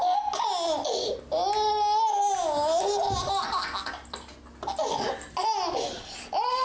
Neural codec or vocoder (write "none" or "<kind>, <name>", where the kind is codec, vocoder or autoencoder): none